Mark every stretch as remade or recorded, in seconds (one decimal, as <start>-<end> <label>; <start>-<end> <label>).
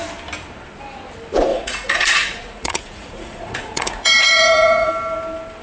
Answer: 0.0-1.5 recorded; 1.5-4.9 remade; 4.9-5.6 recorded